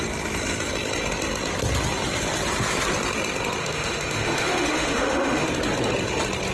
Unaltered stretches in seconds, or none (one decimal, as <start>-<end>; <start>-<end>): 0.0-3.6; 5.5-6.5